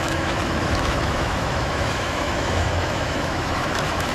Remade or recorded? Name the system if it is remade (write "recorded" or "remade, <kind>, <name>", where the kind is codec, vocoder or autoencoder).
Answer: remade, autoencoder, DAC-VAE